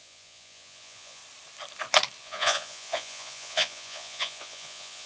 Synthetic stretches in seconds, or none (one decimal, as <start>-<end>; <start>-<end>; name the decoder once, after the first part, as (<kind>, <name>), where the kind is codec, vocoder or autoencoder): 0.0-1.2 (vocoder, Vocos); 2.2-5.1